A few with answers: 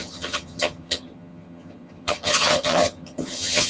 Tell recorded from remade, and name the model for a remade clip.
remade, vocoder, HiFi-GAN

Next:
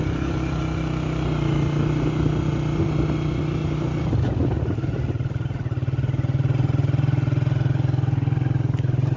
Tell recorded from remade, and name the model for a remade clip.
recorded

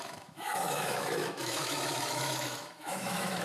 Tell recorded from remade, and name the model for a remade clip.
remade, autoencoder, DAC-VAE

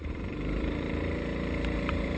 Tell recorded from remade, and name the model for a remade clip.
remade, vocoder, BigVGAN v2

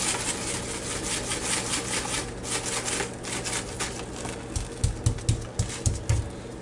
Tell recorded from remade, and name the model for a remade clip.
recorded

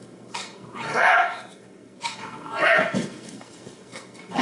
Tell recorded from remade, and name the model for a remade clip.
remade, codec, SNAC